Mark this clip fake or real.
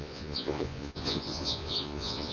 fake